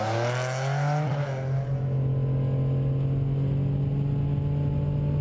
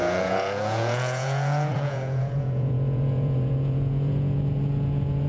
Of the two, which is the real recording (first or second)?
first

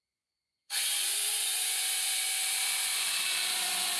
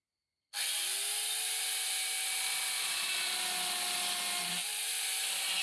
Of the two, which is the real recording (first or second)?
second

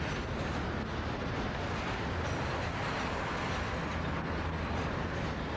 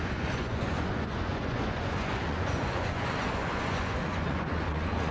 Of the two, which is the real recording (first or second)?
first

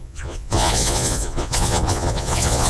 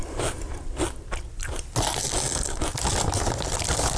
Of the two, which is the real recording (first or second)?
second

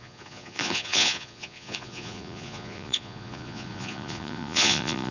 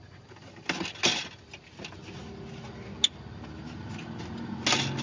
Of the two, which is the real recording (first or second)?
second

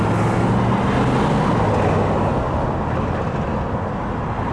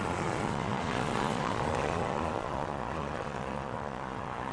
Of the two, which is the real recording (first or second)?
first